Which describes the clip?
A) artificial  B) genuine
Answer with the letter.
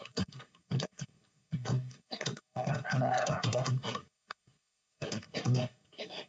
A